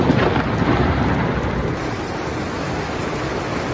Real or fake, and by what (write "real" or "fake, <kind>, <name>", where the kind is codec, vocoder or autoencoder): real